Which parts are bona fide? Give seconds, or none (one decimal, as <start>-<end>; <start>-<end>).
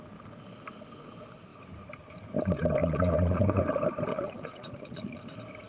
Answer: 0.0-2.8; 3.6-4.1; 5.2-5.7